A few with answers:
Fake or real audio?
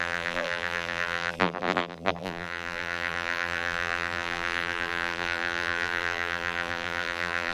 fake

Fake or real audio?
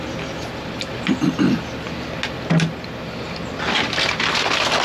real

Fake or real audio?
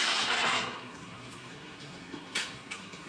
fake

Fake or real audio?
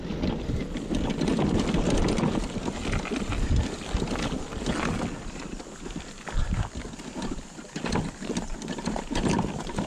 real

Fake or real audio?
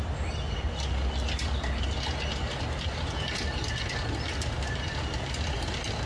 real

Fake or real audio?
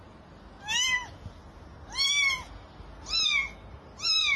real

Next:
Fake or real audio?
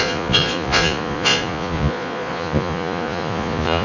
fake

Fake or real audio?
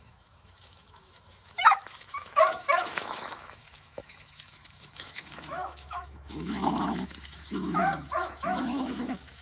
fake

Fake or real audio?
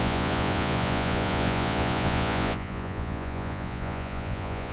fake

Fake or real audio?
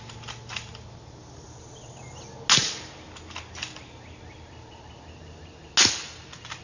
real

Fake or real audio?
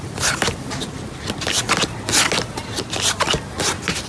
real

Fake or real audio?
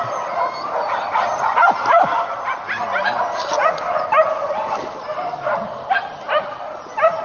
real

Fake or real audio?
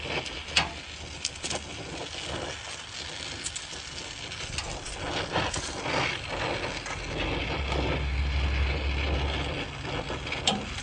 real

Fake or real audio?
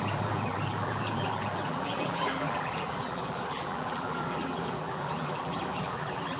fake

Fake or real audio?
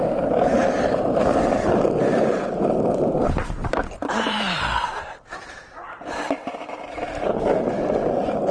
fake